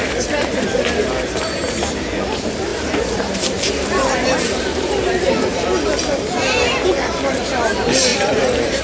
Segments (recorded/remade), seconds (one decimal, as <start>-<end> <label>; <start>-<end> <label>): 0.0-2.7 recorded; 2.7-5.3 remade; 5.3-8.1 recorded; 8.1-8.8 remade